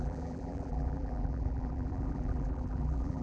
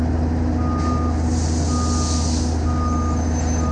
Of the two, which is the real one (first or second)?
second